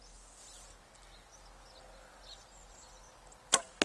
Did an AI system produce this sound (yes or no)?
no